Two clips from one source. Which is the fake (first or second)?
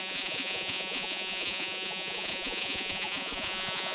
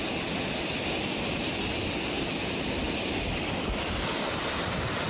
first